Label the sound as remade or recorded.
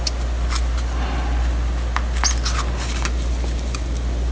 recorded